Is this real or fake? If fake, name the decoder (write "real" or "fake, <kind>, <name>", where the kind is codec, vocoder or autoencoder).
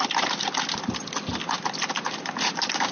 real